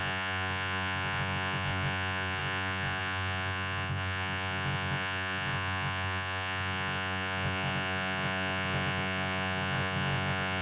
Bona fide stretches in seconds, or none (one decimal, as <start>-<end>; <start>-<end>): none